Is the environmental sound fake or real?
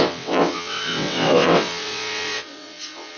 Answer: fake